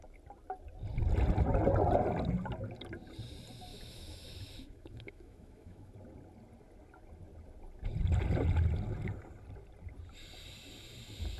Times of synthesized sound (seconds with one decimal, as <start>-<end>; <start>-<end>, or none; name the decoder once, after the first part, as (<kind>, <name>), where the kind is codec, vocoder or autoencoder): 3.7-5.9 (autoencoder, DAC-VAE)